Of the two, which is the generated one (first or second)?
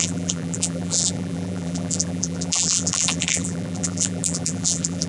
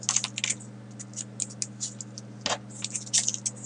first